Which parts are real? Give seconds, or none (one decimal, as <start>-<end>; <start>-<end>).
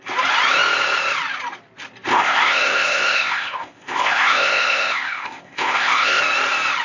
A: 0.0-2.1; 6.2-6.8